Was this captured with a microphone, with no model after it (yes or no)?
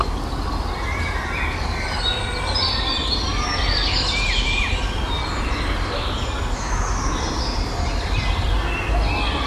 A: yes